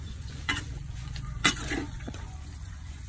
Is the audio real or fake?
fake